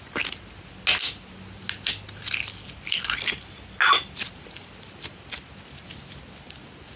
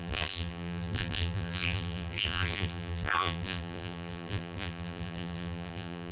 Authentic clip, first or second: first